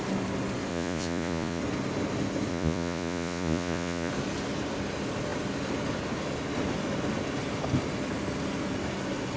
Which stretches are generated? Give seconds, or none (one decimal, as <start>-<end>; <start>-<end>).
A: 0.7-1.6; 2.5-4.1